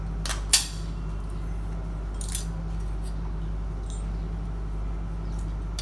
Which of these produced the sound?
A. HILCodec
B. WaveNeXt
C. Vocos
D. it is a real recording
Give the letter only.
D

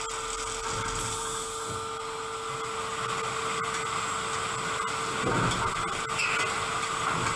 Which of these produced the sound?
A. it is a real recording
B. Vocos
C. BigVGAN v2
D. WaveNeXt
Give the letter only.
A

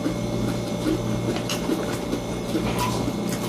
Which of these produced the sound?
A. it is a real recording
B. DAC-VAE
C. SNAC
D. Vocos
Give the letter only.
A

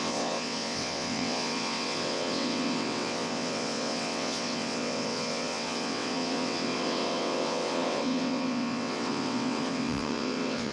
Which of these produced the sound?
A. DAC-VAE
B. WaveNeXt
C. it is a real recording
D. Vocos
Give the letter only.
B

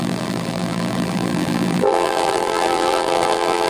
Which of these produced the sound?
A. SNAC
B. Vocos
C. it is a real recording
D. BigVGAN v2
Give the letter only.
D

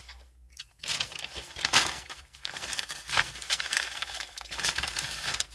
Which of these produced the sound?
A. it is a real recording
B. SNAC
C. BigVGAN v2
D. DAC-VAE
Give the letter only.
B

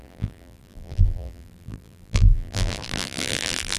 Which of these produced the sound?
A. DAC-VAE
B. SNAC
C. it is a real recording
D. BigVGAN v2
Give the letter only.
D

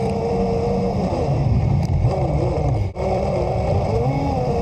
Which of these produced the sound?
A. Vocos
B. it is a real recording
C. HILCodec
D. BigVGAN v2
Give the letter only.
D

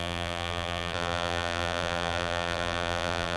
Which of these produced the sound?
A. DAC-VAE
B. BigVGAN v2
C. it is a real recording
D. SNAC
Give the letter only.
B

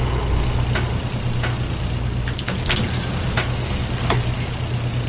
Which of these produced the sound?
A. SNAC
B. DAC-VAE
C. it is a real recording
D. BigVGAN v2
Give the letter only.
C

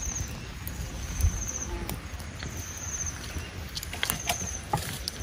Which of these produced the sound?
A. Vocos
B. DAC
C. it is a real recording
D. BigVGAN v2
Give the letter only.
C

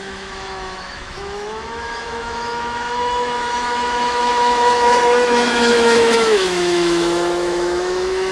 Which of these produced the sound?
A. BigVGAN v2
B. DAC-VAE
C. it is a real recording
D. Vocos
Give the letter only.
B